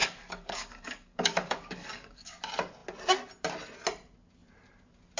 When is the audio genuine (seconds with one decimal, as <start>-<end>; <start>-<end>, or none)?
2.4-5.2